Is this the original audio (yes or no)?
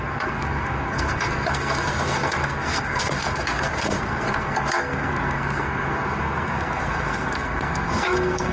no